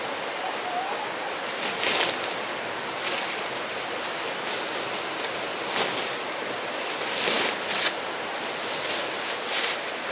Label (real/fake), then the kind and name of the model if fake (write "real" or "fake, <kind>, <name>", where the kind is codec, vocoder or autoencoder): real